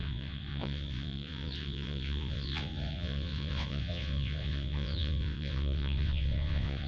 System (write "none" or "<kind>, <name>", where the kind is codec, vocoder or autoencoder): vocoder, WaveNeXt